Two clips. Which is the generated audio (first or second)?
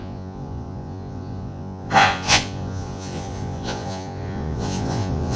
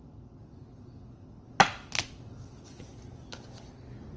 first